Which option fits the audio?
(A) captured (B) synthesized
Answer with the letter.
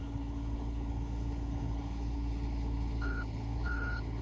B